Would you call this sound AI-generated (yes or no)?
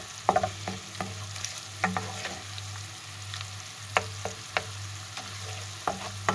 no